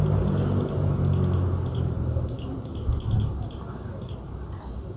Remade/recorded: recorded